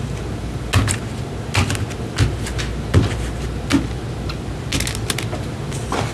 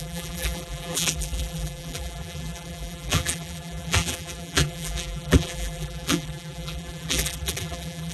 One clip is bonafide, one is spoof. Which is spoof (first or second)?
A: second